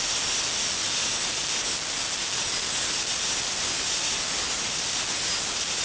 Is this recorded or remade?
recorded